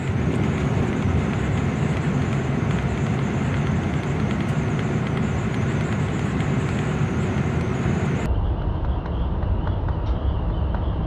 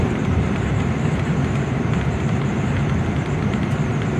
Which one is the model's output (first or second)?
second